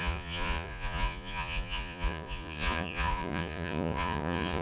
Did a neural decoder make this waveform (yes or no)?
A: yes